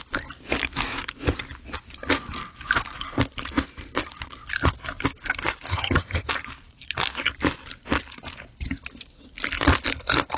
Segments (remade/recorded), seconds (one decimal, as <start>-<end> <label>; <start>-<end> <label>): 0.0-5.7 recorded; 5.7-6.3 remade; 6.3-10.4 recorded